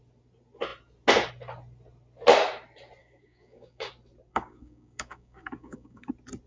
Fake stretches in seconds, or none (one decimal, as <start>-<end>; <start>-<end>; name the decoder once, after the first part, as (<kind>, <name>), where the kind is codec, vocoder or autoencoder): 3.0-3.9 (codec, DAC); 4.3-6.1